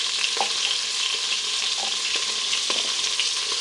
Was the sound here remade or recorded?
recorded